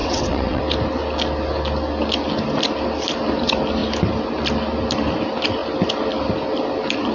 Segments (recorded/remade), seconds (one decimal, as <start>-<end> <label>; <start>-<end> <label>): 0.0-0.6 remade; 0.6-7.1 recorded